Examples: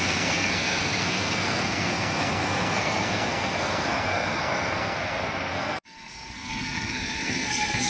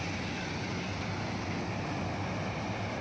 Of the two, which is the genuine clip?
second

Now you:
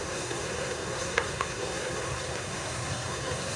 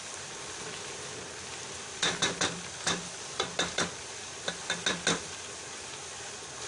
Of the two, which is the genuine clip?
second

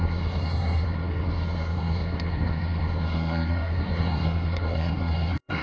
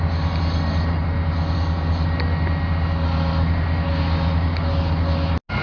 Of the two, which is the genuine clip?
second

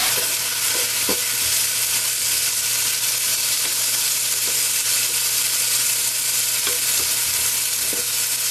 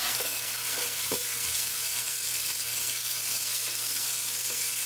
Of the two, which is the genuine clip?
first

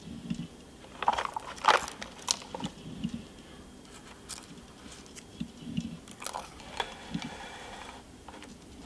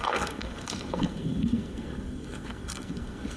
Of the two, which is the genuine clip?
first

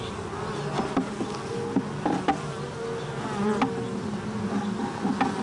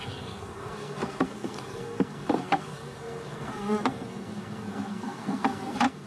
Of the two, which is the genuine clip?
first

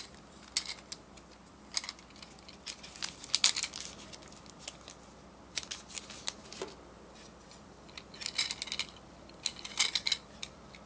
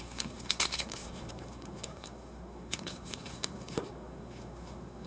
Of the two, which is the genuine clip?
first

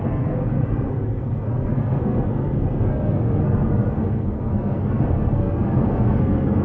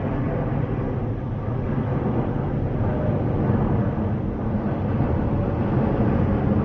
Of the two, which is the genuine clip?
second